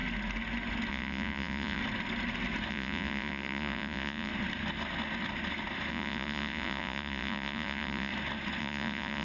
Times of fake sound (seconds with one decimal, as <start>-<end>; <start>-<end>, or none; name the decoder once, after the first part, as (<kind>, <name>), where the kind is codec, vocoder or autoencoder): 0.9-1.8 (vocoder, Vocos); 2.7-4.3; 5.9-8.1; 8.6-9.2